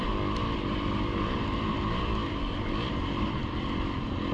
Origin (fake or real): real